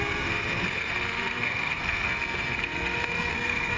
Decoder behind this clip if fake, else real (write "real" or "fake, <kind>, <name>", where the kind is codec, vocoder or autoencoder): fake, codec, SNAC